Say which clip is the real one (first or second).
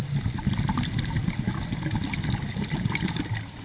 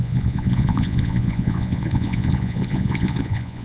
first